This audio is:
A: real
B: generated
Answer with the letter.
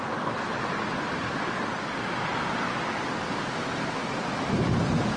A